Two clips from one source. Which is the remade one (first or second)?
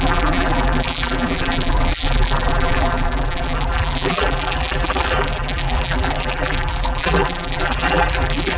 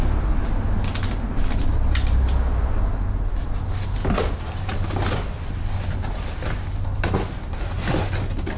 first